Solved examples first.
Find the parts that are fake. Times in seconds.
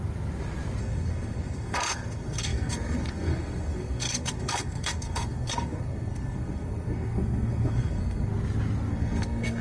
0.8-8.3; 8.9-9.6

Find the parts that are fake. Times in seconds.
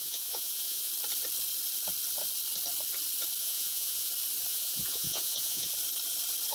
0.0-0.9; 3.4-4.1; 4.5-5.7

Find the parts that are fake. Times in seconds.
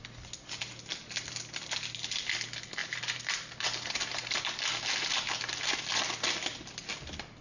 2.8-4.4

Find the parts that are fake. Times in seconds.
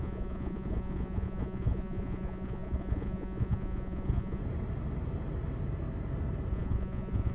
0.0-4.4; 6.5-7.3